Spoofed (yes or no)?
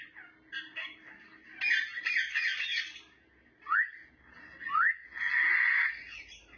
no